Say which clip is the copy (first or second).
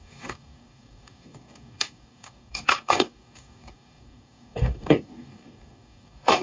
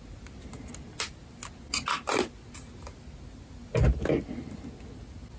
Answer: first